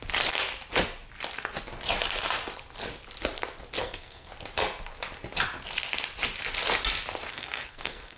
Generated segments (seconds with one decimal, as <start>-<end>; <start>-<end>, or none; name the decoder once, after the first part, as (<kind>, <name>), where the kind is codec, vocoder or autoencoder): 3.8-4.3 (codec, SNAC); 7.3-8.2